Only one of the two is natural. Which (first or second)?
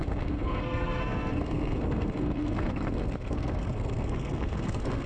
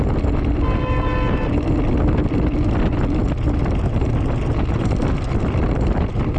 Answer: second